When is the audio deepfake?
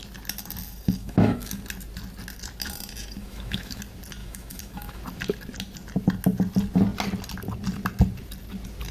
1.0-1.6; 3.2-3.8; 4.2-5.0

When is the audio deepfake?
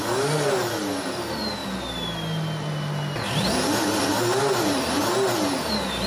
none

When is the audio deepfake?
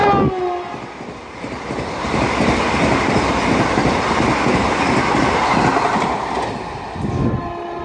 none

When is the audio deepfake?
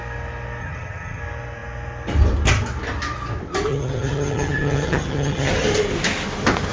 0.6-1.2; 3.7-5.5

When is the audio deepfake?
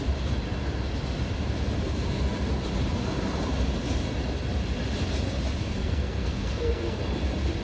5.6-7.0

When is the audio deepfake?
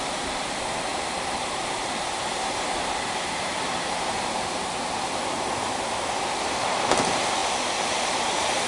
0.0-3.5; 6.7-8.7